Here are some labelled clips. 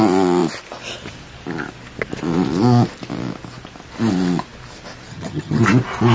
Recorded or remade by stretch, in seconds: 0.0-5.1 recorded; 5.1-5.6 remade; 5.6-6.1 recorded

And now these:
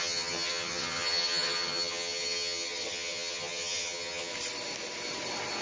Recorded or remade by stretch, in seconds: 0.0-4.3 remade; 4.3-5.6 recorded

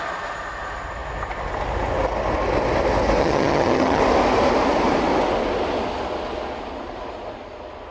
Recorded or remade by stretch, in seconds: 0.0-3.2 recorded; 3.2-4.0 remade; 4.0-7.9 recorded